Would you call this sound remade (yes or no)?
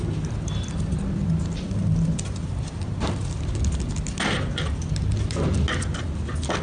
no